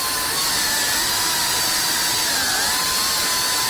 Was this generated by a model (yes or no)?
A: no